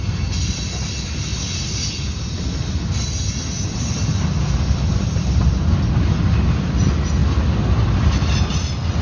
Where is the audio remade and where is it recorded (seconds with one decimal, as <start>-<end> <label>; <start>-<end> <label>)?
0.0-9.0 recorded